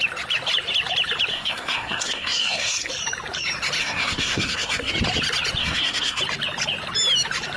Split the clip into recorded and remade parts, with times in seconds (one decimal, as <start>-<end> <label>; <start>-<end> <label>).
0.0-1.3 recorded; 1.3-2.9 remade; 2.9-3.8 recorded; 3.8-4.9 remade; 4.9-5.6 recorded; 5.6-6.2 remade; 6.2-7.6 recorded